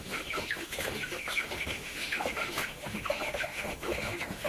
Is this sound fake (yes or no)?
yes